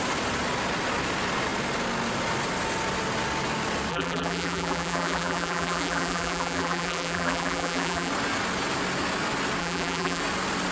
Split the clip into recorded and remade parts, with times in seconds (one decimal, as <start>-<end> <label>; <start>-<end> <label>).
0.0-3.9 recorded; 3.9-8.1 remade; 8.1-9.6 recorded; 9.6-10.2 remade; 10.2-10.7 recorded